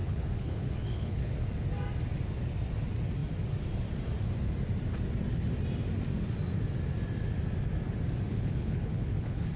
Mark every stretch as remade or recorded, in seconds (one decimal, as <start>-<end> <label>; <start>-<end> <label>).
0.0-1.3 remade; 1.3-8.3 recorded; 8.3-9.6 remade